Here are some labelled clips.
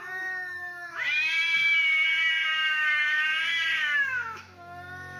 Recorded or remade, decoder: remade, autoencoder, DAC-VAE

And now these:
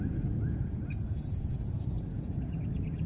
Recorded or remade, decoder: remade, vocoder, Vocos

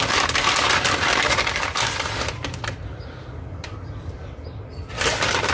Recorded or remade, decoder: remade, vocoder, BigVGAN v2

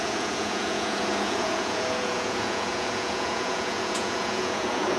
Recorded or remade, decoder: remade, vocoder, Vocos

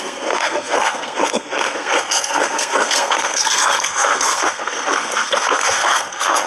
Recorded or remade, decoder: remade, codec, SNAC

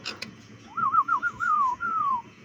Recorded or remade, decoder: remade, vocoder, Vocos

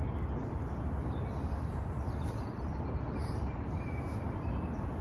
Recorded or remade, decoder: recorded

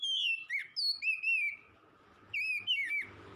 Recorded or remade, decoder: recorded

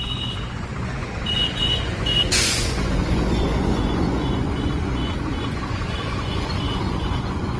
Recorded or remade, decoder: remade, vocoder, Vocos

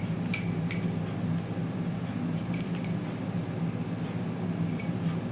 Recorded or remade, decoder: recorded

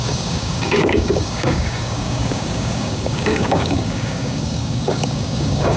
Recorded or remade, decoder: remade, codec, DAC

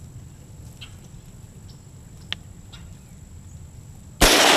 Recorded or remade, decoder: recorded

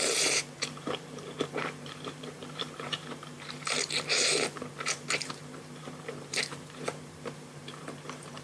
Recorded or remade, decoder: remade, vocoder, BigVGAN v2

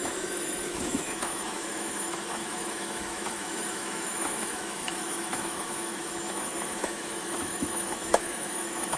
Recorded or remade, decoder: remade, autoencoder, DAC-VAE